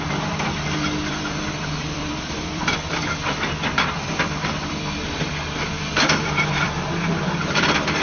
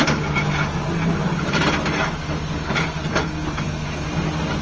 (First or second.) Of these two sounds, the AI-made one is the first